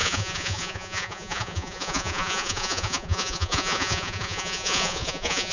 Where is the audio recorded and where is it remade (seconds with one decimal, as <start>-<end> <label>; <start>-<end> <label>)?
0.0-5.5 remade